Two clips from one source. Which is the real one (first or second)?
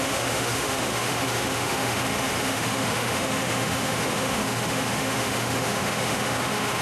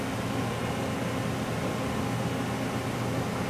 second